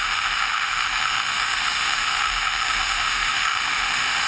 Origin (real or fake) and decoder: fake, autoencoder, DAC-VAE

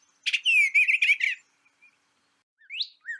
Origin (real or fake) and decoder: real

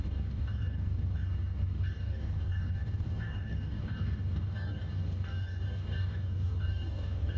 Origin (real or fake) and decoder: fake, codec, DAC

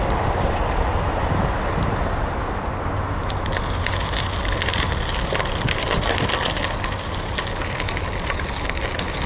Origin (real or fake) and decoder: real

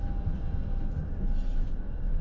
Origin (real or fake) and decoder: real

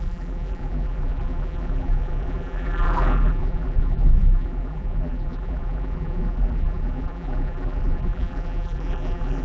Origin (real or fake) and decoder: fake, vocoder, BigVGAN v2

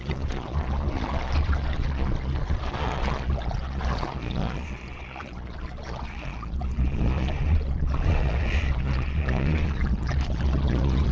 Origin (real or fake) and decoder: fake, vocoder, Vocos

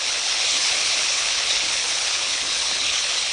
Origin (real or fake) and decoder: fake, codec, HILCodec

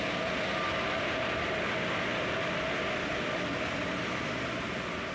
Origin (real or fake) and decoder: real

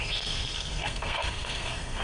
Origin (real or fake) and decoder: fake, codec, SNAC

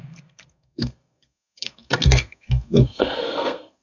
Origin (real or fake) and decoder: fake, codec, SNAC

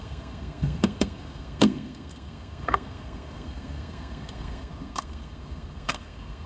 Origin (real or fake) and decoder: fake, codec, SNAC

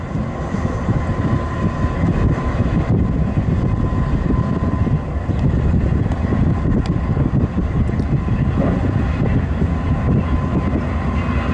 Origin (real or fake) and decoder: real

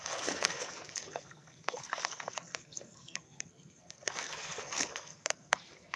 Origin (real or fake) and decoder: fake, codec, SNAC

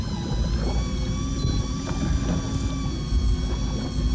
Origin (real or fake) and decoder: real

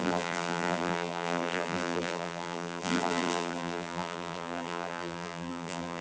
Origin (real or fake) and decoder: fake, vocoder, BigVGAN v2